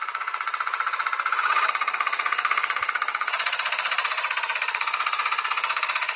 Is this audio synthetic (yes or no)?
yes